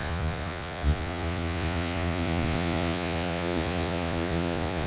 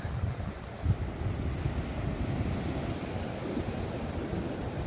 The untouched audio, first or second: second